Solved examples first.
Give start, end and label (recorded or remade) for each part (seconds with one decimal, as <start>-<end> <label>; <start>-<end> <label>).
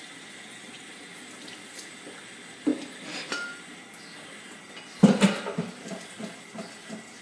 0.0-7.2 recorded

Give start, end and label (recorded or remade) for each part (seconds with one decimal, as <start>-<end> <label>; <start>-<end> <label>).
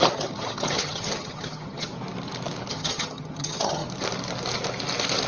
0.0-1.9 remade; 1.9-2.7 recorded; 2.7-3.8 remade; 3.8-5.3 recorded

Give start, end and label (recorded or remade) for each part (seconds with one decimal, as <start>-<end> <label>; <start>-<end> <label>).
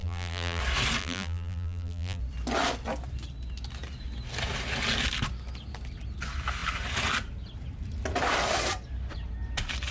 0.0-0.6 remade; 0.6-1.0 recorded; 1.0-2.2 remade; 2.2-9.9 recorded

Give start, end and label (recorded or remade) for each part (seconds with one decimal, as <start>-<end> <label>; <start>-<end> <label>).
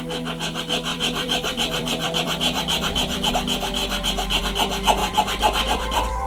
0.0-0.9 recorded; 0.9-3.3 remade; 3.3-5.0 recorded; 5.0-6.3 remade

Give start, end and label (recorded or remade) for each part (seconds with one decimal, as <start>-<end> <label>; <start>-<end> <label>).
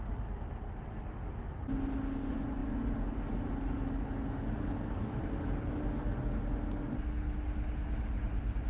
0.0-8.7 recorded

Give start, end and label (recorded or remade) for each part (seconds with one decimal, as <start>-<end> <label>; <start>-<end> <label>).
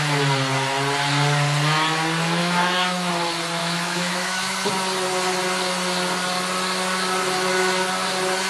0.0-2.4 recorded; 2.4-3.1 remade; 3.1-3.6 recorded; 3.6-4.7 remade; 4.7-8.5 recorded